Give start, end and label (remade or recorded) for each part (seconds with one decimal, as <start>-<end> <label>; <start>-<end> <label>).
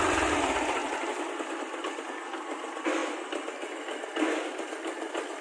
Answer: 0.0-5.4 recorded